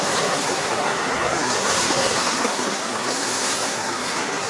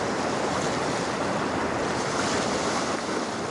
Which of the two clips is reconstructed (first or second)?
first